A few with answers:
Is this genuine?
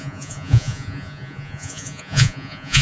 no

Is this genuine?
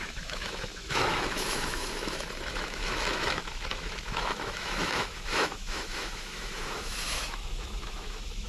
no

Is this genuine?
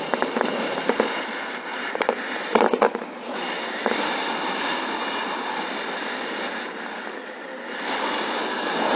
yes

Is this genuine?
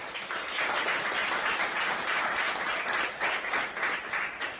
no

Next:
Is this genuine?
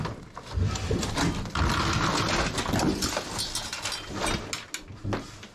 yes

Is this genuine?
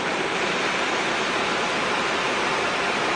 yes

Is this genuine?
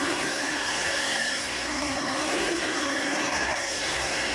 no